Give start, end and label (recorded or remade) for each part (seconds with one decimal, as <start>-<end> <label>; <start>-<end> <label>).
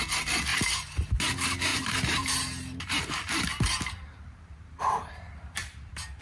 0.0-0.5 recorded; 0.5-1.0 remade; 1.0-1.7 recorded; 1.7-3.1 remade; 3.1-3.5 recorded; 3.5-6.2 remade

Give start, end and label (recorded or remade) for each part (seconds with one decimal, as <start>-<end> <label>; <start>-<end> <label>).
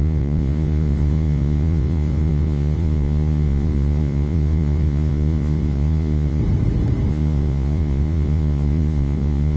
0.0-6.4 remade; 6.4-7.1 recorded; 7.1-9.6 remade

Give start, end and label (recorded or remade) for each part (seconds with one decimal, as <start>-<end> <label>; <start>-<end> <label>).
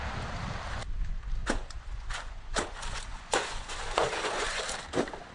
0.0-1.4 recorded; 1.4-4.6 remade; 4.6-5.3 recorded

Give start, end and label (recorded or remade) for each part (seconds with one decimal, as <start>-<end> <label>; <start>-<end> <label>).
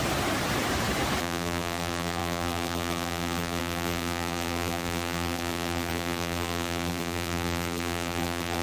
0.0-1.2 recorded; 1.2-8.6 remade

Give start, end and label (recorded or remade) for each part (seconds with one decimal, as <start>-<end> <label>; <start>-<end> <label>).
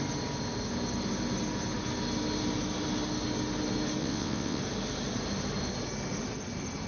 0.0-4.0 recorded; 4.0-4.6 remade; 4.6-6.9 recorded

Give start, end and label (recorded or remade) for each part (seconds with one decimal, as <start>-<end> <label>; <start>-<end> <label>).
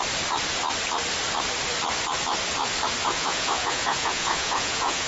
0.0-3.0 recorded; 3.0-5.1 remade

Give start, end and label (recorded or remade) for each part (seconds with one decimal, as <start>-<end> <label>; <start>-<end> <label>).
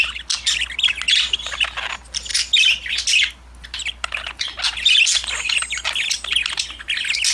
0.0-7.3 recorded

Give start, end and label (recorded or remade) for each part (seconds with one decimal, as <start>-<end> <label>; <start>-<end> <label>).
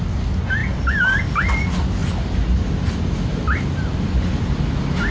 0.0-5.1 recorded